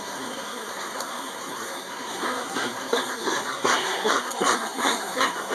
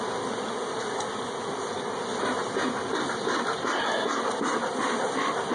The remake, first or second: first